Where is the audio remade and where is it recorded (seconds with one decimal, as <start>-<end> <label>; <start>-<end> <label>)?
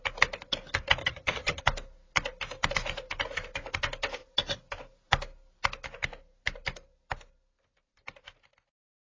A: 0.0-1.0 recorded; 1.0-1.6 remade; 1.6-9.2 recorded